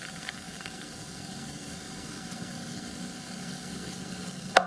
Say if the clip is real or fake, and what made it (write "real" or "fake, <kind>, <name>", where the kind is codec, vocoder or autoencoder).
fake, codec, SNAC